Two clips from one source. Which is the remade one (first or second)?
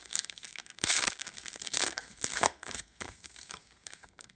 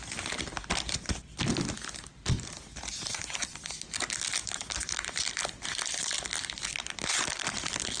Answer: first